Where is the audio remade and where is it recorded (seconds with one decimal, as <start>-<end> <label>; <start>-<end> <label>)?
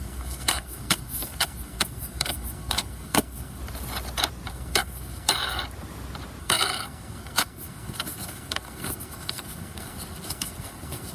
0.0-3.6 remade; 3.6-4.5 recorded; 4.5-5.6 remade; 5.6-6.4 recorded; 6.4-11.1 remade